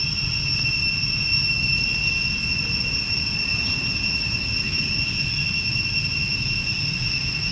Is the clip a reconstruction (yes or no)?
no